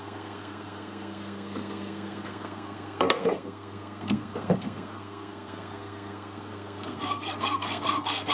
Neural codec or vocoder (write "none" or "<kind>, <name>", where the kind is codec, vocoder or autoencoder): codec, SNAC